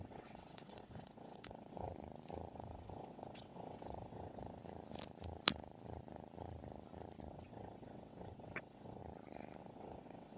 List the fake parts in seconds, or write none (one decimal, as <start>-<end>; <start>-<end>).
0.0-1.9; 2.5-4.6; 7.3-9.0; 9.6-10.4